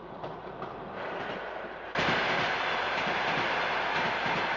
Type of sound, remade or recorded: recorded